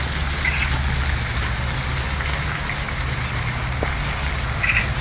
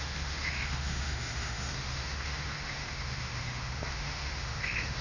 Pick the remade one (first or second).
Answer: second